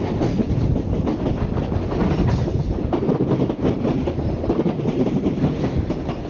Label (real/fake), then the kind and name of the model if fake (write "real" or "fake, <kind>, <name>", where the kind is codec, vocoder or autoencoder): real